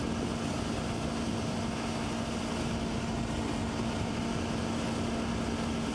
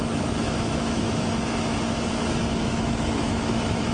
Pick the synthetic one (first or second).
second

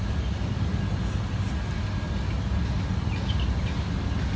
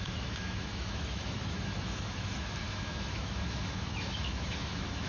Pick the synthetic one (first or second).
second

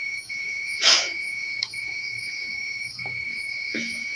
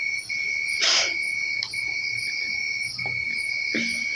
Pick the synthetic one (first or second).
first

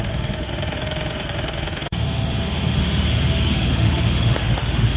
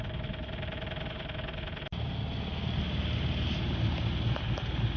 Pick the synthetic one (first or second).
first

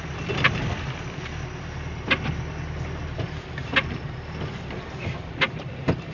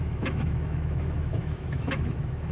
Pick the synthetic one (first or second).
second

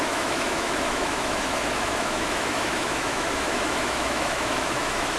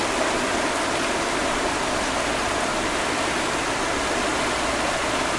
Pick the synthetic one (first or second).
first